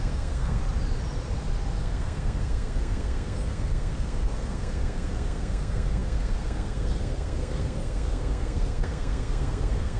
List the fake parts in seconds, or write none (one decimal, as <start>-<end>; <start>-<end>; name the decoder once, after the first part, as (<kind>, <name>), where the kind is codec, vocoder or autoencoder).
0.0-0.6 (codec, SNAC); 1.8-10.0